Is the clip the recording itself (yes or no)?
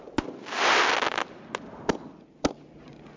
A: yes